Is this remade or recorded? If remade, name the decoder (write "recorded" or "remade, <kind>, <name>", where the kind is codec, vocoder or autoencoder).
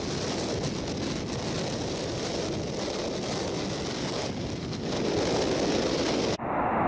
recorded